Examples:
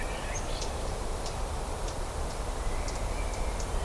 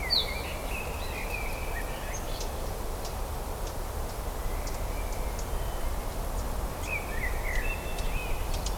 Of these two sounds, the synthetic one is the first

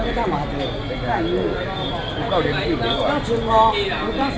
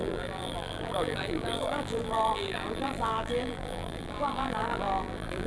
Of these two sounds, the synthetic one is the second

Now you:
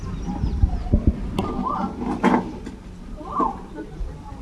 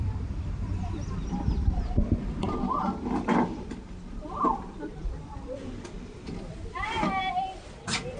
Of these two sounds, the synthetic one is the second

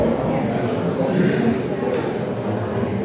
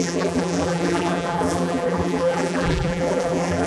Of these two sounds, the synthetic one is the second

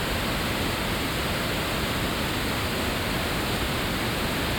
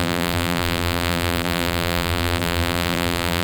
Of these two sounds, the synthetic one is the second